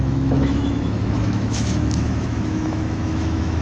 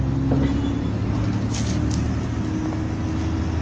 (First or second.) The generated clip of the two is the first